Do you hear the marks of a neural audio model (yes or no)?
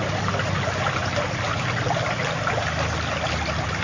no